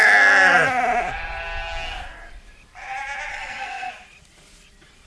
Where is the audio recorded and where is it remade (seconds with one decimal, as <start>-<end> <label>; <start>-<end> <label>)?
0.0-3.3 recorded; 3.3-3.9 remade; 3.9-5.1 recorded